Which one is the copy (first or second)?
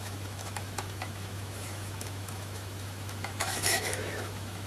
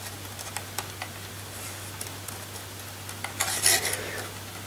first